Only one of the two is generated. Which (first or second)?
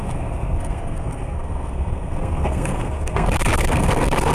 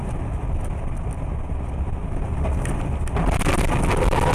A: first